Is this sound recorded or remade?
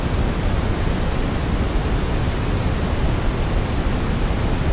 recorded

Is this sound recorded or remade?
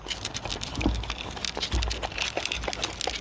recorded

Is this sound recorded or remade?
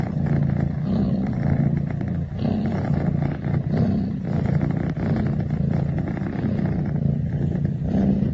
recorded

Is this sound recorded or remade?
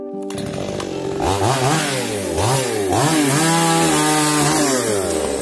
recorded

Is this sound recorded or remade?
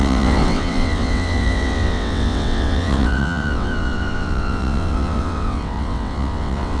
remade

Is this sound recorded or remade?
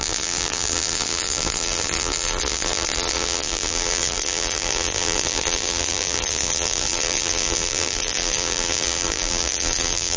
remade